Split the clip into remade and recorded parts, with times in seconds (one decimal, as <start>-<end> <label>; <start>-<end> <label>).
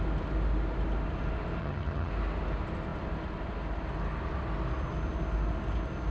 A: 0.0-1.6 recorded; 1.6-2.1 remade; 2.1-6.1 recorded